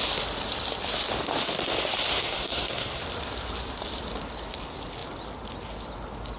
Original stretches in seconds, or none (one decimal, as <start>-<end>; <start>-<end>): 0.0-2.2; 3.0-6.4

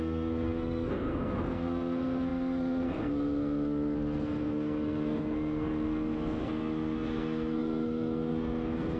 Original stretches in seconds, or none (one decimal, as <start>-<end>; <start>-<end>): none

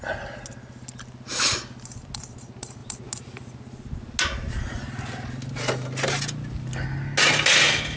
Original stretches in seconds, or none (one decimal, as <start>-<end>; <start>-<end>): 0.0-8.0

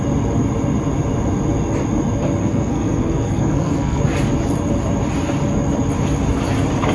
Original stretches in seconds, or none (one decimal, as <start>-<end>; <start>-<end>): 0.0-2.4; 4.0-6.9

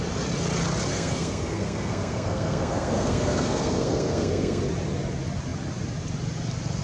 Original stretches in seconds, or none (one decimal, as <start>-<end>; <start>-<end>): 0.0-0.9; 4.6-6.8